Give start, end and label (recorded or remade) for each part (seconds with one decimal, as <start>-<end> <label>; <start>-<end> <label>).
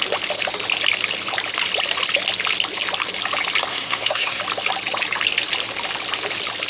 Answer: 0.0-3.7 recorded; 3.7-4.4 remade; 4.4-6.7 recorded